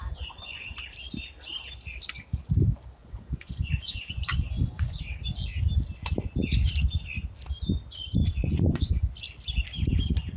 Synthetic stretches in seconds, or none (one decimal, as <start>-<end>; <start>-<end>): 0.0-0.7; 3.0-5.0; 8.2-9.0